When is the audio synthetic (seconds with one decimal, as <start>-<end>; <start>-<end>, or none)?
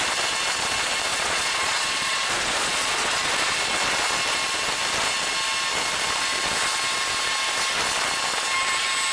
1.1-3.3